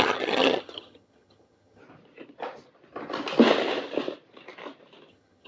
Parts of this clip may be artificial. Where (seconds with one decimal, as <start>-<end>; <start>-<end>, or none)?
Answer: 0.0-1.8; 5.1-5.5